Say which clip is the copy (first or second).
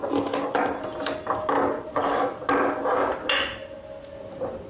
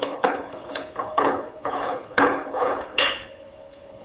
second